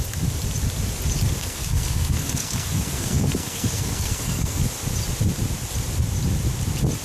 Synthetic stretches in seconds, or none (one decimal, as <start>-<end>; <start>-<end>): 1.4-4.6